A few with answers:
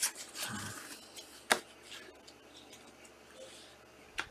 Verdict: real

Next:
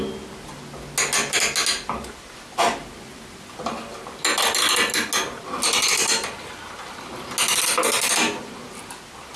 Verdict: real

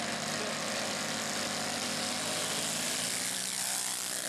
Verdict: real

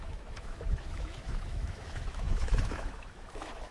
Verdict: fake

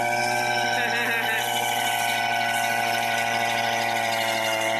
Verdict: real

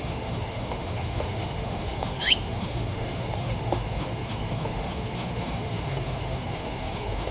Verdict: fake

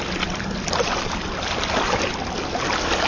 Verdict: real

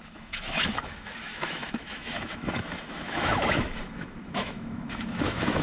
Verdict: fake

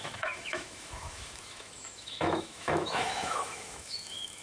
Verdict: fake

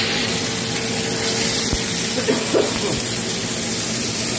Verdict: real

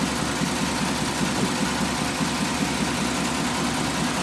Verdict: real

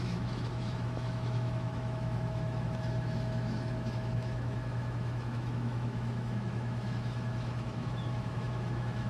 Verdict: fake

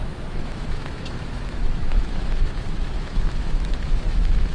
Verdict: fake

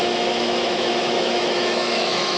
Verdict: fake